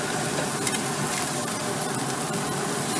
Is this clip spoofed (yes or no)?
no